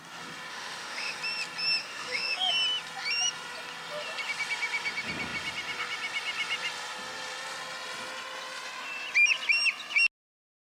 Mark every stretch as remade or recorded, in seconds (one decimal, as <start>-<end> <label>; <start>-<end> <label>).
0.0-0.5 recorded; 0.5-1.2 remade; 1.2-1.8 recorded; 1.8-2.5 remade; 2.5-10.6 recorded